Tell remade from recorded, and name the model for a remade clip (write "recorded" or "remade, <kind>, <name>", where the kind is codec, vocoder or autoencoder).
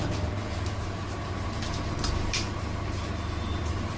recorded